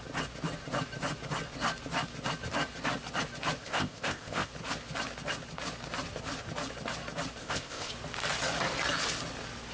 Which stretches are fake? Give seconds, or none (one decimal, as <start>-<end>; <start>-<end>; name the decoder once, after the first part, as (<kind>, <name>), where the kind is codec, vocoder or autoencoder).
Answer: 3.6-4.5 (codec, ZipCodec); 7.4-7.9